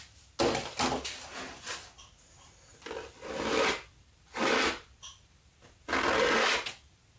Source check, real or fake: real